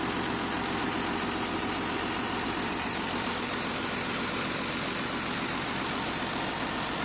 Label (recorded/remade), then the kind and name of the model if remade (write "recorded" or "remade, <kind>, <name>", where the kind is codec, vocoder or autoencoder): recorded